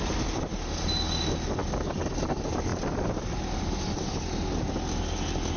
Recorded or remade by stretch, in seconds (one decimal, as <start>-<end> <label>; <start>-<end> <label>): 0.0-5.6 recorded